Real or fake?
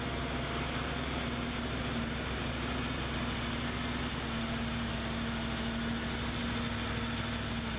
real